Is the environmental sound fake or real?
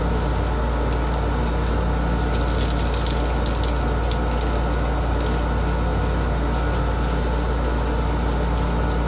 real